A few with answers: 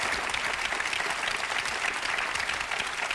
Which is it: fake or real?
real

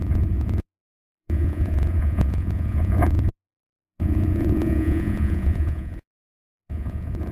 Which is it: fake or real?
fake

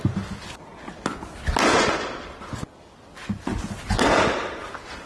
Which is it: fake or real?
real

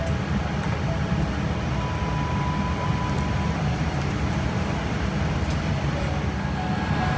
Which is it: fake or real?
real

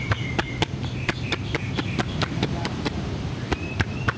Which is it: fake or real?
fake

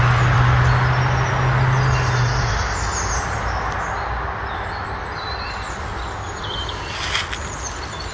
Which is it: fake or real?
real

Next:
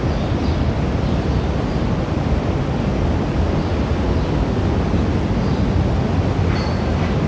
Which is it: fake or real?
real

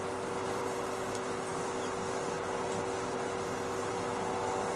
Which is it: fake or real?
real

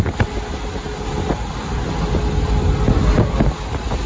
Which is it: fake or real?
real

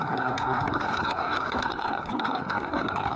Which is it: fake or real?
fake